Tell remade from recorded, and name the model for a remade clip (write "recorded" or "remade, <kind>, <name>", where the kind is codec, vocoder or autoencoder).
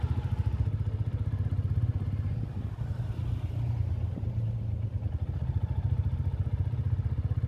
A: recorded